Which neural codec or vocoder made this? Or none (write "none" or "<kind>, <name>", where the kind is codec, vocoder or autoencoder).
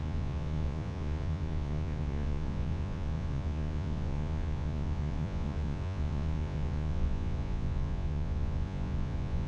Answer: vocoder, Vocos